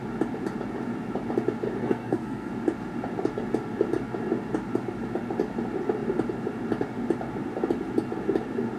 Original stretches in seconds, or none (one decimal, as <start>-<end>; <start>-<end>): 0.0-1.8; 2.5-8.8